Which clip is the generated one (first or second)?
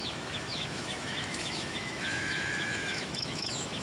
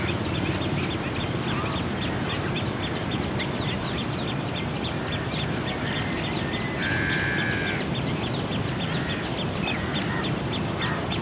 first